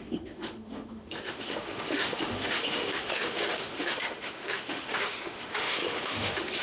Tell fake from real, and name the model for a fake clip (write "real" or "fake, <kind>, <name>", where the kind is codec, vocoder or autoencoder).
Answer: fake, autoencoder, DAC-VAE